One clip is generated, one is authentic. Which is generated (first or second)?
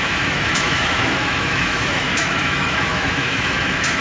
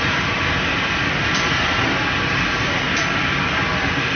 first